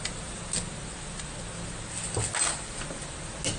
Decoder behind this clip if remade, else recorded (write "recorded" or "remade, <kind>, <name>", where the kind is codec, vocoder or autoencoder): recorded